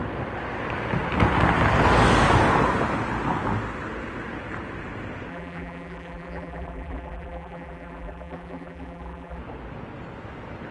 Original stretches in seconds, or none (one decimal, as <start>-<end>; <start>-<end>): 0.0-5.3; 9.4-10.7